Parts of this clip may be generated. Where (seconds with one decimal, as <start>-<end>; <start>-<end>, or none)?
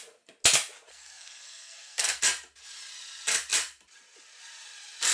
0.9-2.2